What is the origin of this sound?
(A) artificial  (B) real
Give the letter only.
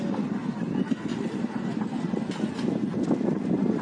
B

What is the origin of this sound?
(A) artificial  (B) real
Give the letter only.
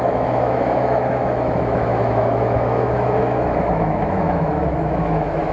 A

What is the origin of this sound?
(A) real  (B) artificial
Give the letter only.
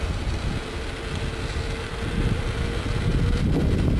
A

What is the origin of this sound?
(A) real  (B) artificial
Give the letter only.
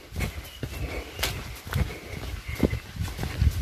A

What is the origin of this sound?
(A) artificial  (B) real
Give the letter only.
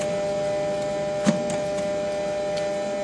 B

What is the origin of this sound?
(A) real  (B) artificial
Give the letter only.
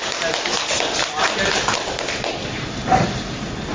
A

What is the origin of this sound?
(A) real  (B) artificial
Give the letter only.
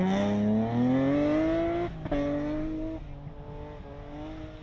A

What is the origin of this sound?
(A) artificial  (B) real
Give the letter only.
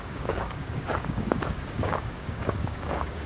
A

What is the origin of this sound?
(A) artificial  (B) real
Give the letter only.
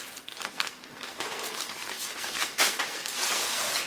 A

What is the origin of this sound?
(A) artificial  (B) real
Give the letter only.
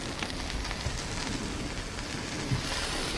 B